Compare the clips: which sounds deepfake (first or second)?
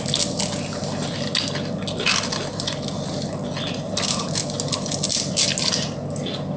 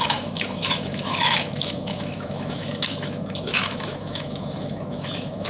second